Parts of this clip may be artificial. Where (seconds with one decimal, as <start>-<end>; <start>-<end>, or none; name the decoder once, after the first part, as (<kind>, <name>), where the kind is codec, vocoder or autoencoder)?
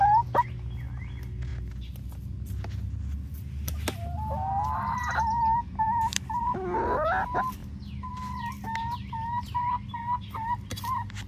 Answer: none